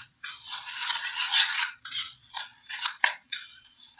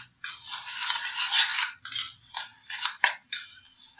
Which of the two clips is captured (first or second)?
second